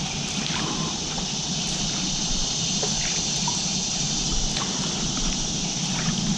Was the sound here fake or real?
real